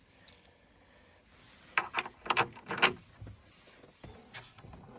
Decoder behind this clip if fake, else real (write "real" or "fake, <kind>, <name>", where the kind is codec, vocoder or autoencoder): real